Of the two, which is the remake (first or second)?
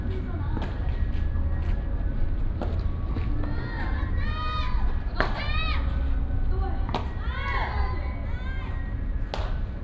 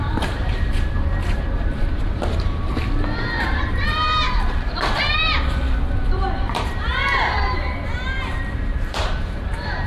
second